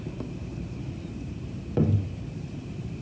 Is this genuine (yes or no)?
yes